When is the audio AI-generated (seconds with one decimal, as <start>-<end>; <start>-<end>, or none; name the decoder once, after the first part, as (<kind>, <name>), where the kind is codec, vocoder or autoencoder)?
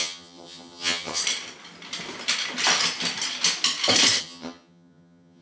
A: 0.0-1.2 (vocoder, HiFi-GAN); 4.2-5.4